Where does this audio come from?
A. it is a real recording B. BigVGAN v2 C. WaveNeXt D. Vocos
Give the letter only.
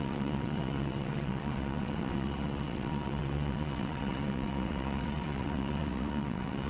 C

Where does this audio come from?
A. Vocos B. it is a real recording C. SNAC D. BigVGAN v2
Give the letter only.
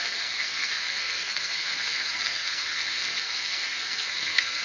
C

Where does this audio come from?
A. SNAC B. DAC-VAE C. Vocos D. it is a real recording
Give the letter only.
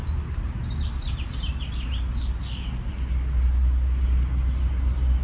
D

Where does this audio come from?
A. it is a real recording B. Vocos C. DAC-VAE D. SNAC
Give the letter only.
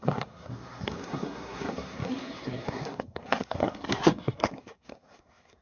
D